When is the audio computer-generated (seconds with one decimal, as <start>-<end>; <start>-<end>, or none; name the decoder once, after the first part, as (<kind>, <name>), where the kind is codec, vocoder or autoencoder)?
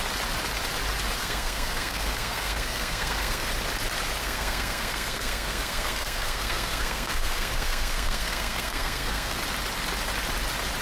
1.2-3.5 (codec, SNAC); 4.2-9.4